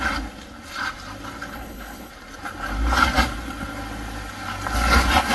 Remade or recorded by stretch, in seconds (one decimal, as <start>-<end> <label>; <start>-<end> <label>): 0.0-1.5 recorded; 1.5-2.1 remade; 2.1-5.3 recorded